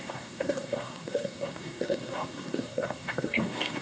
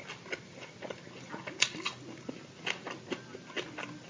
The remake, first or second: first